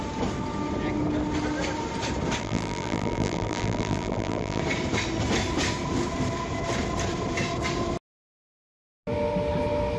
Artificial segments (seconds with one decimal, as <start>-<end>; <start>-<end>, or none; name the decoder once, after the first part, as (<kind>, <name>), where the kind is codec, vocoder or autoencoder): 2.4-4.6 (vocoder, BigVGAN v2)